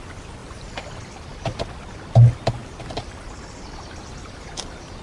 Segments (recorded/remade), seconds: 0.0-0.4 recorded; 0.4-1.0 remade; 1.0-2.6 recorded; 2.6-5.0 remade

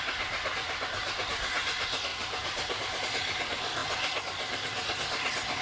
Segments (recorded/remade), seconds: 0.0-2.1 recorded; 2.1-3.0 remade; 3.0-5.6 recorded